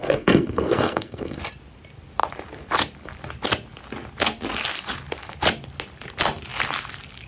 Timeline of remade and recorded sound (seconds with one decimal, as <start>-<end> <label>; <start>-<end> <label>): 0.0-1.4 remade; 1.4-7.3 recorded